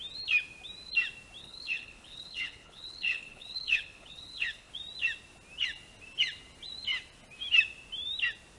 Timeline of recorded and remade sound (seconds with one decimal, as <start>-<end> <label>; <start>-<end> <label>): 0.0-1.4 recorded; 1.4-4.7 remade; 4.7-8.6 recorded